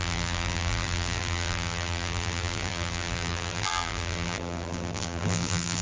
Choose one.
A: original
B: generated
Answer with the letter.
B